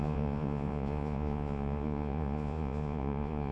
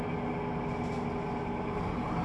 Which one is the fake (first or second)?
first